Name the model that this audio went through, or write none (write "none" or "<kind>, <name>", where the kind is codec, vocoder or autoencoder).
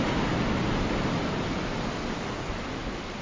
none